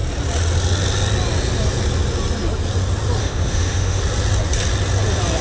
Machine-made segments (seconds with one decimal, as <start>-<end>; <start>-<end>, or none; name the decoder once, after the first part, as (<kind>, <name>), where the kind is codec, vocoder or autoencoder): 3.2-4.0 (autoencoder, DAC-VAE)

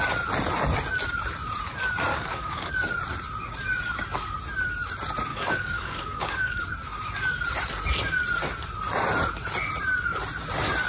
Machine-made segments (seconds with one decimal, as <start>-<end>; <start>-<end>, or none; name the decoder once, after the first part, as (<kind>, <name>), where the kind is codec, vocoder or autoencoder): 2.1-2.7 (codec, DAC); 5.3-6.6

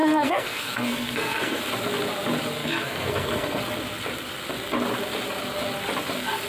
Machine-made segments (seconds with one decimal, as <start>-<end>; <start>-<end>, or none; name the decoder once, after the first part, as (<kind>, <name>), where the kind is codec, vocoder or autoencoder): 0.0-1.6 (codec, SNAC); 2.6-3.6